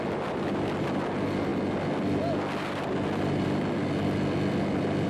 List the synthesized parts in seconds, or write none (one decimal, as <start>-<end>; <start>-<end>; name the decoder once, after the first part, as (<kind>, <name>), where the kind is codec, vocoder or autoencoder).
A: none